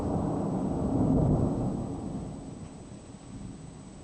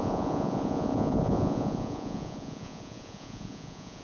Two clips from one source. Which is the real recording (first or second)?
first